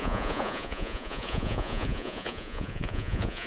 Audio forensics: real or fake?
fake